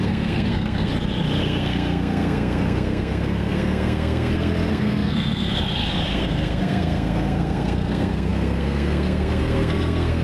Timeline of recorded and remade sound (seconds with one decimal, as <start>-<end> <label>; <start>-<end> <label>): 0.0-0.9 remade; 0.9-1.4 recorded; 1.4-10.2 remade